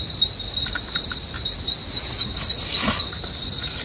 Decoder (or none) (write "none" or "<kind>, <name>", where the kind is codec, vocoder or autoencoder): none